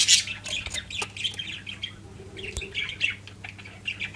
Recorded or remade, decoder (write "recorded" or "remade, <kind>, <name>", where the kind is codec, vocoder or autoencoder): recorded